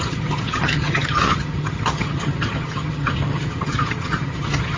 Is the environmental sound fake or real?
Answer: fake